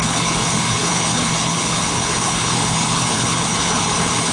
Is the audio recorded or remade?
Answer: remade